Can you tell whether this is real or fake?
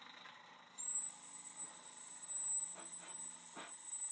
real